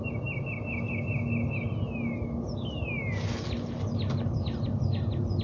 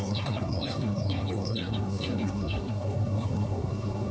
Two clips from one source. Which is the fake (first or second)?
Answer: second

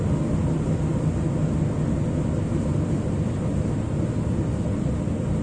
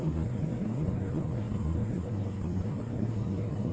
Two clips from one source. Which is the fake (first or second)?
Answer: second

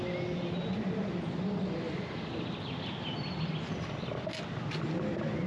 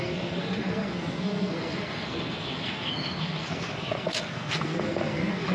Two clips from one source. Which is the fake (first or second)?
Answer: second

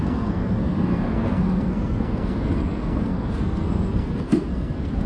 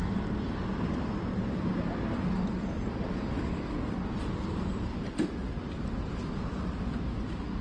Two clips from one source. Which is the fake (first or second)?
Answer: first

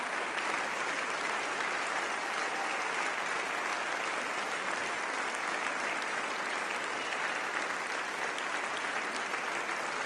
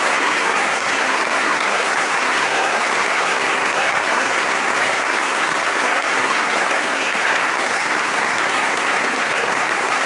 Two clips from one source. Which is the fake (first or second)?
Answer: second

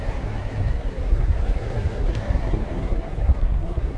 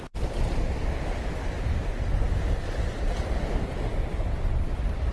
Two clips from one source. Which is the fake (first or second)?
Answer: first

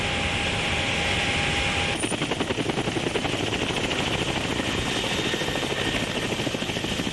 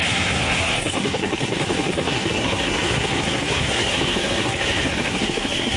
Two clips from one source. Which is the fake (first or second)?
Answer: second